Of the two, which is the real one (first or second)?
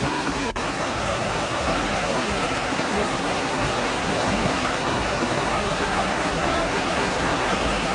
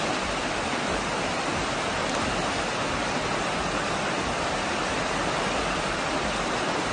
second